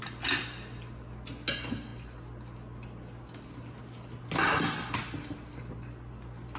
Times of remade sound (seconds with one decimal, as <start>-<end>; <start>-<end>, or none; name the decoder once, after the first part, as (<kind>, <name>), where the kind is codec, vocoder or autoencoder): none